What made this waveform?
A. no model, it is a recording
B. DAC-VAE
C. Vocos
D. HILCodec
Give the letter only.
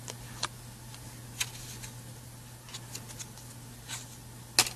A